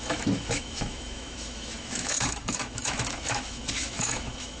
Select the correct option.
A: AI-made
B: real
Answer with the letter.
A